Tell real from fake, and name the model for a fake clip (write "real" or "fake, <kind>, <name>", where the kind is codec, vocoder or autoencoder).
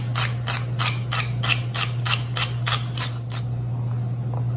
real